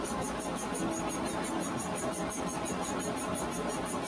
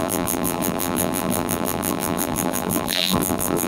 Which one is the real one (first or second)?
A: first